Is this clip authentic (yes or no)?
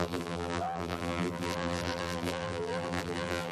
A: no